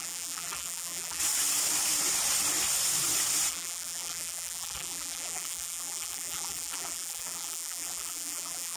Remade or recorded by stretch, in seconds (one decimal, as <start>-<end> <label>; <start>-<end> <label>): 0.0-1.2 remade; 1.2-3.5 recorded; 3.5-8.8 remade